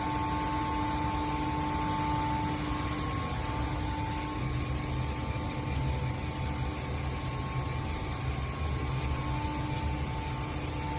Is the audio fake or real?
real